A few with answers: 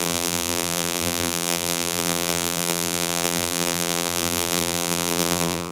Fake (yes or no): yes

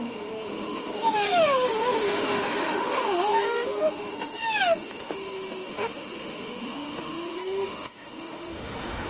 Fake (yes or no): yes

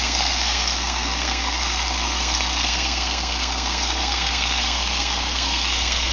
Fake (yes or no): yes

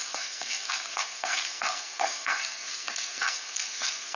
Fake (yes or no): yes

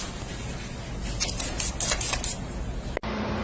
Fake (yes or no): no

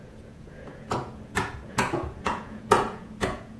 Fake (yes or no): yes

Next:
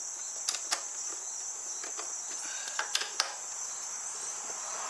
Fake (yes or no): no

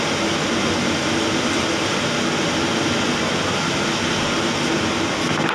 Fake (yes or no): no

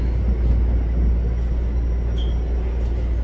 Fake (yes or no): no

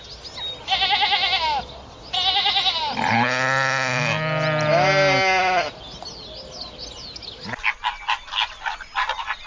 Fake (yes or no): no